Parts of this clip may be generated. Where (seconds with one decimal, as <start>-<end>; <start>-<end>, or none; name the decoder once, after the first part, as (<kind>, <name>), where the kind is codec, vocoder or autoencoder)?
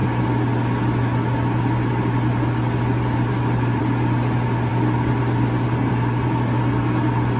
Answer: none